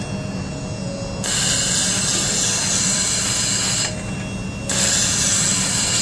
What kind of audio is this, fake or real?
real